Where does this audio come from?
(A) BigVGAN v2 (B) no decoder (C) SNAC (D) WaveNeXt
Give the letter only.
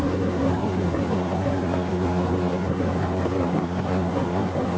C